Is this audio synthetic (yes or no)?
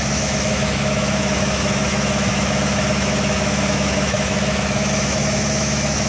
yes